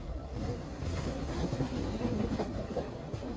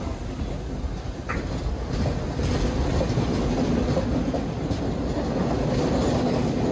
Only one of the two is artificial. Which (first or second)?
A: first